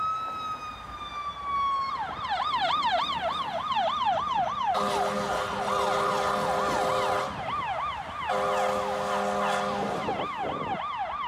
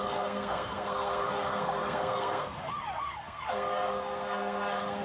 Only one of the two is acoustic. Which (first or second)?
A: first